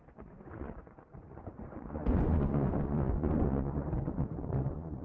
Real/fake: fake